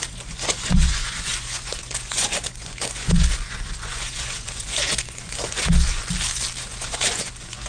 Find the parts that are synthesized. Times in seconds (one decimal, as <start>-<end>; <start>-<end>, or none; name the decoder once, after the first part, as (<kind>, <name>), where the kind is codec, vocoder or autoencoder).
0.0-6.0 (vocoder, Vocos); 6.6-7.7